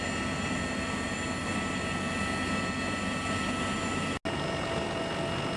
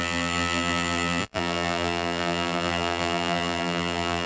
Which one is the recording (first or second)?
first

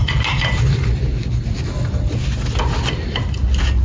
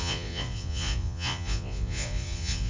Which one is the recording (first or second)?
first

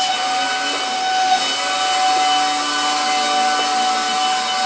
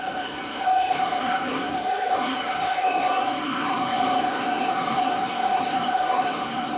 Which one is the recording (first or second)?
first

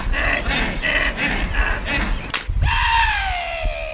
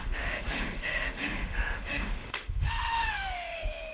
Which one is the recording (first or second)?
first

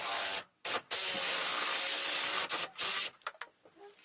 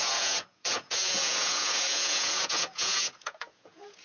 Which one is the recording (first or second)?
first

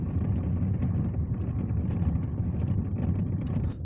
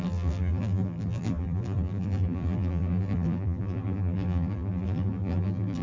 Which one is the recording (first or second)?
first